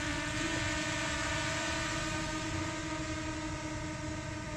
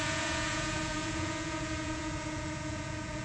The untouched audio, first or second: first